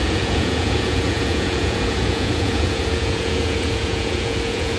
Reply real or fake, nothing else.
fake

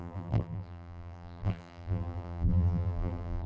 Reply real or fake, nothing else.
fake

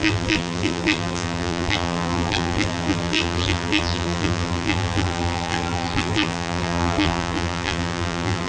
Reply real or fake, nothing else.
fake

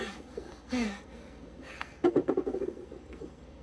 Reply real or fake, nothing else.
fake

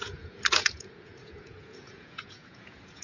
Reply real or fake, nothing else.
fake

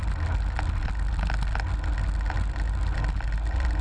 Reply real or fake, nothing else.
real